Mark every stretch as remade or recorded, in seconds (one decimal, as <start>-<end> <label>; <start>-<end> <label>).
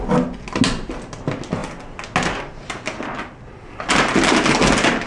0.0-5.1 recorded